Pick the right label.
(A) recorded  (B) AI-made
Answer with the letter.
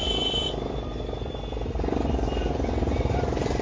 A